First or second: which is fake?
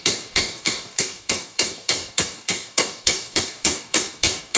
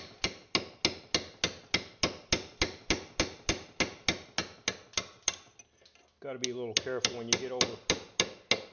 first